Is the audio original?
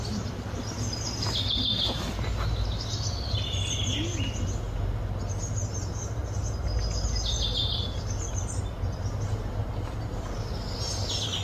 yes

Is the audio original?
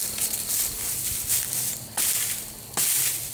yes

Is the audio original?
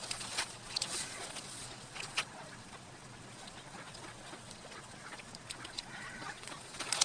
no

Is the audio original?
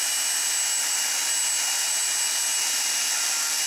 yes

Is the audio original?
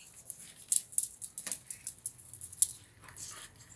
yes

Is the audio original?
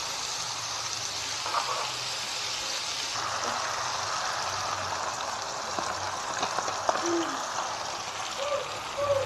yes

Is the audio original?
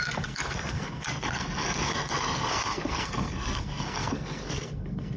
no